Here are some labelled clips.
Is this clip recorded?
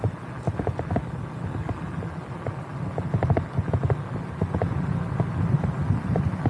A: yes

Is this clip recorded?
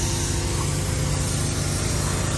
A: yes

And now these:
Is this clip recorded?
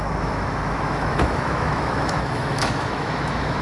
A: no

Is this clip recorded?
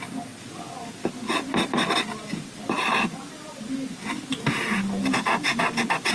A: yes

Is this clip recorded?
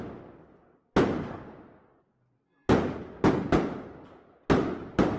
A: yes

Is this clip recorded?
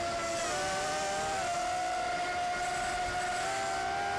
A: yes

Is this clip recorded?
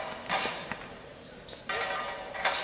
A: yes